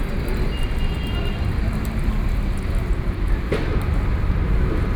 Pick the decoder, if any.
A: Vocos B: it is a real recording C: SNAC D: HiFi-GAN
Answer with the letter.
B